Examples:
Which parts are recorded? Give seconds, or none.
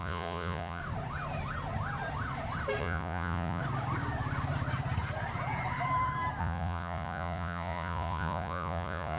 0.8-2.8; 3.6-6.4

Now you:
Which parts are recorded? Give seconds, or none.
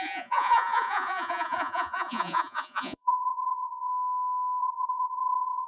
3.9-4.6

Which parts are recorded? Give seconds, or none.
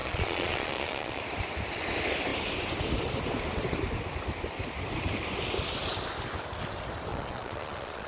1.2-7.1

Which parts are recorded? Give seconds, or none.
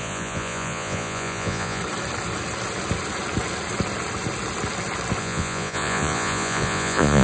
1.8-5.2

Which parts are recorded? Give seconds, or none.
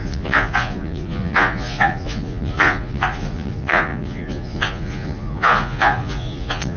none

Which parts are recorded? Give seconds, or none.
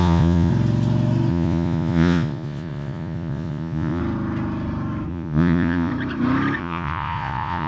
0.5-1.3; 4.0-5.1; 5.9-6.6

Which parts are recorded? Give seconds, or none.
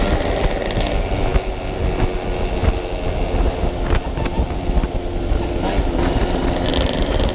0.0-7.3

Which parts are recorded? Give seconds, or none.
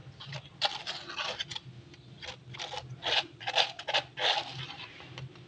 0.0-5.5